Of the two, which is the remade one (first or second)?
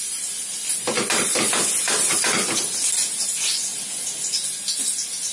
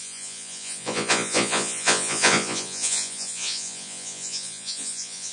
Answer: second